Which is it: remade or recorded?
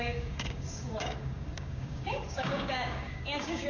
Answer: remade